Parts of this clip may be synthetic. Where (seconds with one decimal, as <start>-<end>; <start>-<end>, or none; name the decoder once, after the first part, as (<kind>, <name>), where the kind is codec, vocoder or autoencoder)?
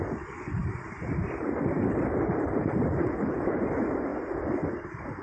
3.0-3.6 (codec, HILCodec)